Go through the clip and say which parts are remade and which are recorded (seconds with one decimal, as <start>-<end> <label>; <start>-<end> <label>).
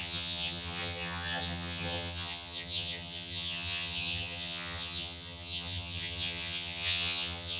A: 0.0-7.6 remade